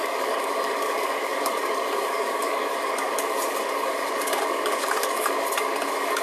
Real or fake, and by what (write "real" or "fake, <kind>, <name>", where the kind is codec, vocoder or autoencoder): fake, codec, DAC